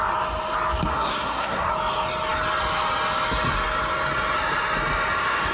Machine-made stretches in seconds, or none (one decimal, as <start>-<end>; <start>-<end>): 0.9-1.7